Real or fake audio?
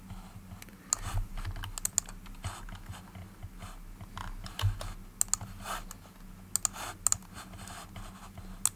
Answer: real